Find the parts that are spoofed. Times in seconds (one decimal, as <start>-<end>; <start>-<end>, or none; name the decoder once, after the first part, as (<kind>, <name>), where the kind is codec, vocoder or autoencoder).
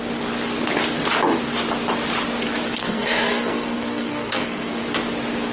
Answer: 2.8-4.8 (codec, SNAC)